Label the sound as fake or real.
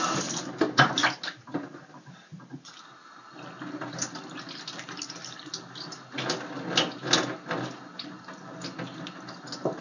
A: real